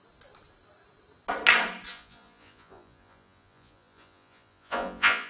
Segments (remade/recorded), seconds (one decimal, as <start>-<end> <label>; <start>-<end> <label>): 0.0-1.9 recorded; 1.9-5.3 remade